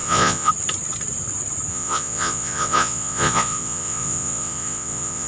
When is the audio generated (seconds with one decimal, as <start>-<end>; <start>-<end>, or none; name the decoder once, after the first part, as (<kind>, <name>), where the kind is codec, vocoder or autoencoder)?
0.0-0.5 (vocoder, Vocos); 1.7-5.3